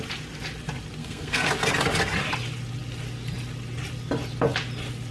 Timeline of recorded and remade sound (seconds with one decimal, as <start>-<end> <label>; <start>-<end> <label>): 0.0-1.0 recorded; 1.0-1.5 remade; 1.5-5.1 recorded